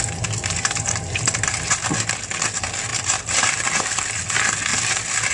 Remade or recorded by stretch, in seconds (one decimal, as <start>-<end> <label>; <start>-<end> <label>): 0.0-0.4 recorded; 0.4-1.8 remade; 1.8-2.9 recorded; 2.9-3.8 remade; 3.8-5.3 recorded